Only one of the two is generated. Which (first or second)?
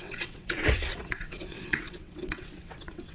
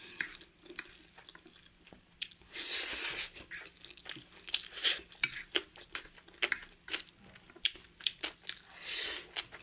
first